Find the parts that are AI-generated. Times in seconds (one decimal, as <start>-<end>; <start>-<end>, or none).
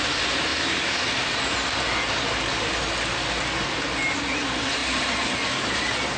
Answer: none